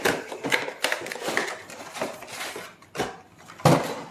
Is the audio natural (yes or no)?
yes